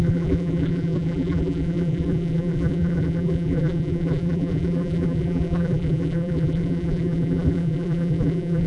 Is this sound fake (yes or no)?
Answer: yes